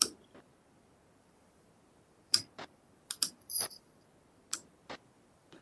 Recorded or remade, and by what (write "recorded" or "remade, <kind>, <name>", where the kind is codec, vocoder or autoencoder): remade, vocoder, BigVGAN v2